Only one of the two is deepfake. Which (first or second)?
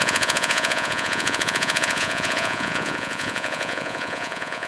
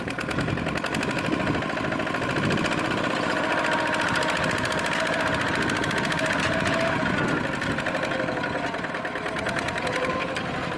first